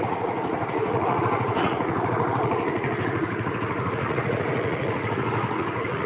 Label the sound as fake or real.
fake